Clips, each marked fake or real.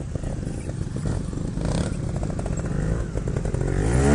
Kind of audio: real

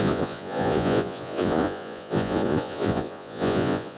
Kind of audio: fake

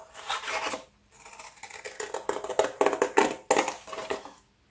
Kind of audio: real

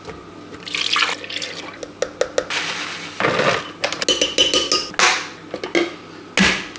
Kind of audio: real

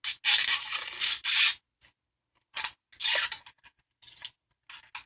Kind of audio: real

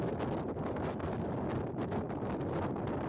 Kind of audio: real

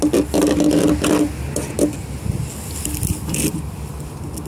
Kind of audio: real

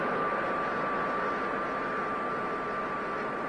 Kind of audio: real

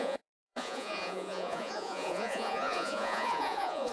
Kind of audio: fake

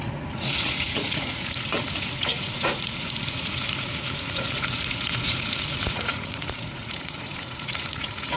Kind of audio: fake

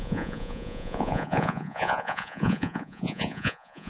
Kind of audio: fake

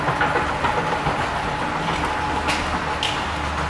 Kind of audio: real